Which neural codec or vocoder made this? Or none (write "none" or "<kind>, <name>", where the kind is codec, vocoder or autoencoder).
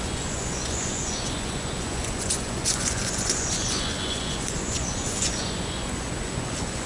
vocoder, Vocos